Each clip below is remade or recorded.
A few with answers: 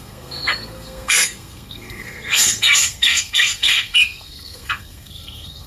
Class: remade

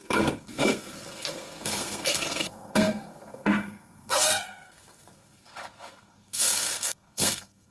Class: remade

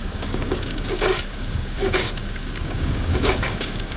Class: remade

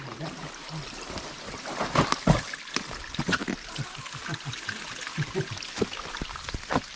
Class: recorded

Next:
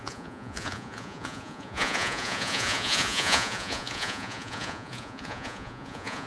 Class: remade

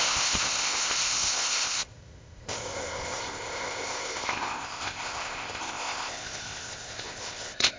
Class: remade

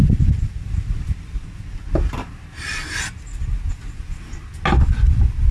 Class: recorded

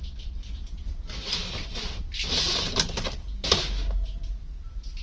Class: recorded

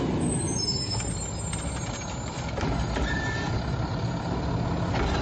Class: recorded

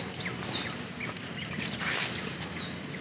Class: recorded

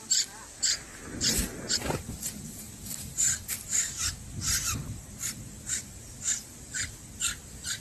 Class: remade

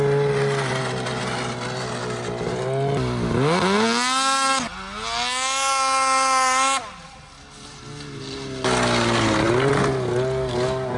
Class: recorded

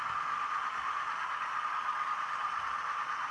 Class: recorded